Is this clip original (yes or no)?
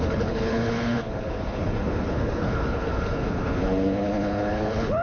no